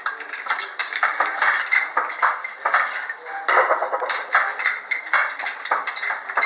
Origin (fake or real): real